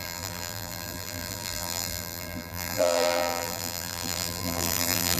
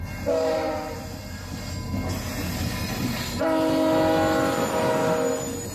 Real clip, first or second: second